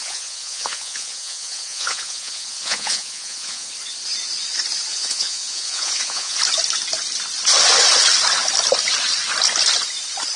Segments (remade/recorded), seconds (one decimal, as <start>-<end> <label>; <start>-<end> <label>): 0.0-3.7 remade; 3.7-4.9 recorded; 4.9-6.4 remade; 6.4-10.4 recorded

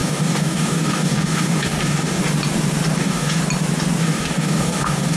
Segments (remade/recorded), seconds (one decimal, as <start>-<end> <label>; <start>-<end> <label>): 0.0-2.2 remade; 2.2-3.0 recorded; 3.0-3.4 remade; 3.4-4.0 recorded; 4.0-5.2 remade

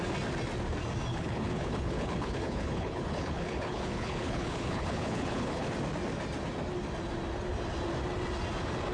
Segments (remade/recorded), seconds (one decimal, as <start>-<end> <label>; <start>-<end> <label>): 0.0-1.1 recorded; 1.1-5.7 remade; 5.7-8.9 recorded

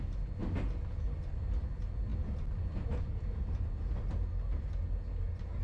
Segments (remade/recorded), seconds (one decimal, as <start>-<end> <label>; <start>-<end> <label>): 0.0-5.6 recorded

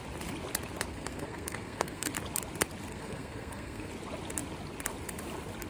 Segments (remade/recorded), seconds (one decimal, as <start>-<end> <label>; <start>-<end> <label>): 0.0-0.9 recorded; 0.9-2.1 remade; 2.1-2.9 recorded; 2.9-3.9 remade; 3.9-5.7 recorded